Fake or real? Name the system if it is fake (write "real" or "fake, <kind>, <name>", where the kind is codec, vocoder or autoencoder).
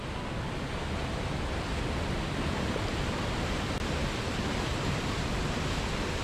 real